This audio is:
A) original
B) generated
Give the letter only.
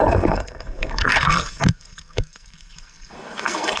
B